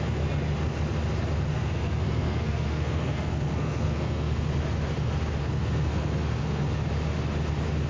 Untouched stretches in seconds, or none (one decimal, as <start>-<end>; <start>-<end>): 0.0-1.5; 4.5-5.4; 6.8-7.9